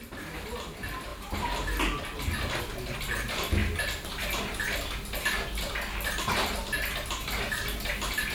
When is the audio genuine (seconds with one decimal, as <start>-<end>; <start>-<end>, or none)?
0.0-8.3